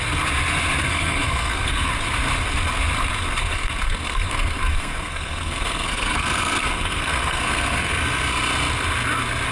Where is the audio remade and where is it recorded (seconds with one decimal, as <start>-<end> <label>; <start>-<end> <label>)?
0.0-0.8 recorded; 0.8-1.9 remade; 1.9-3.4 recorded; 3.4-7.9 remade; 7.9-9.5 recorded